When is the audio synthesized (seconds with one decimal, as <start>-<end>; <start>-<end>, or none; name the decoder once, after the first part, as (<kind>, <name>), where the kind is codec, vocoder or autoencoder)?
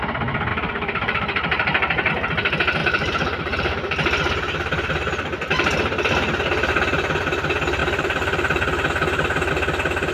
0.5-2.1 (vocoder, BigVGAN v2); 2.8-6.7; 7.8-9.5